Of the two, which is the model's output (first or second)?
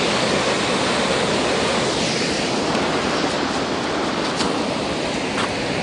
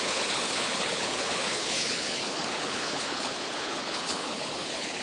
second